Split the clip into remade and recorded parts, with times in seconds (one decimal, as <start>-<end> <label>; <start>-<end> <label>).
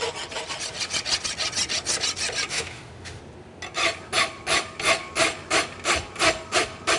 0.0-2.5 recorded; 2.5-3.2 remade; 3.2-7.0 recorded